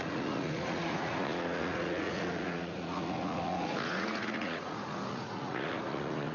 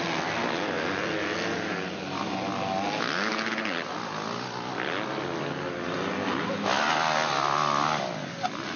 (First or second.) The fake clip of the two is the first